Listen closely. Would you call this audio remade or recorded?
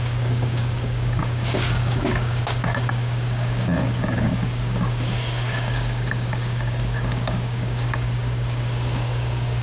remade